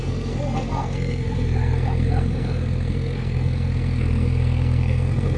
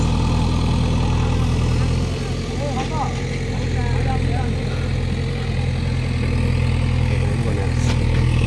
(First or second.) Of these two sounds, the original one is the second